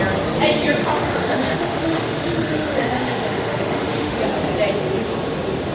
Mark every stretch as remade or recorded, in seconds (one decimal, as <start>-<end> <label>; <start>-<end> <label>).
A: 0.0-0.8 recorded; 0.8-4.2 remade; 4.2-5.7 recorded